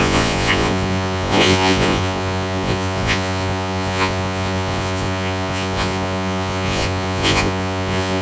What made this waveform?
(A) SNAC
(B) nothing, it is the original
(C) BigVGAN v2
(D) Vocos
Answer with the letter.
D